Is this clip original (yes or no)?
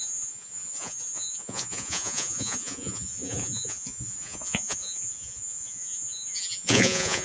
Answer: no